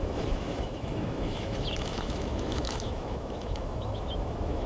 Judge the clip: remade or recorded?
remade